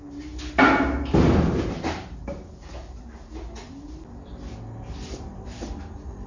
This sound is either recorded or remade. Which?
recorded